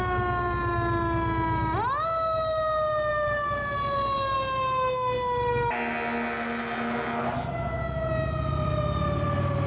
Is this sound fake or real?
real